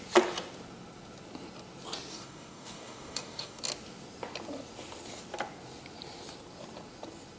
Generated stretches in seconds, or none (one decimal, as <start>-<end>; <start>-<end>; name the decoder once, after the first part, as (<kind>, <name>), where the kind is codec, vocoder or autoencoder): 2.1-3.6 (codec, DAC)